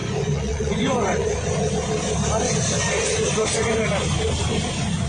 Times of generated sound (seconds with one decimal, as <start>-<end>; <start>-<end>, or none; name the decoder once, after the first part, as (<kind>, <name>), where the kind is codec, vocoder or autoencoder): 0.0-1.7 (vocoder, Vocos)